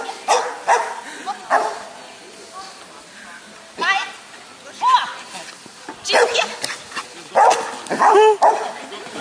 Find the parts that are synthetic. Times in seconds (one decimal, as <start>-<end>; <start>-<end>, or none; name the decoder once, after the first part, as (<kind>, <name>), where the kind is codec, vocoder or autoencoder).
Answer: none